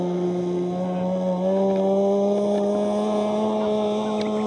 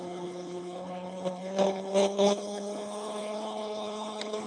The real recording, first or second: first